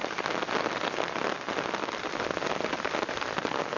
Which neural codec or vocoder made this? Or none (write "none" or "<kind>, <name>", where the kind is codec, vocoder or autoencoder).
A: none